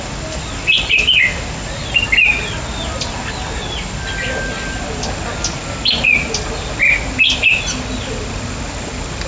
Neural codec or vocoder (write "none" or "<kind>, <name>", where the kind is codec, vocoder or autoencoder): none